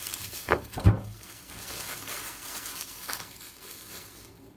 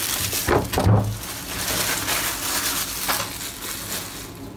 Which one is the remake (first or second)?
first